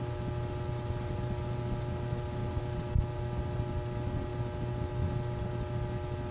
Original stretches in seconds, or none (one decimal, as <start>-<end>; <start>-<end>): 0.0-6.3